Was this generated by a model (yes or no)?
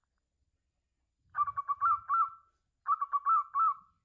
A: no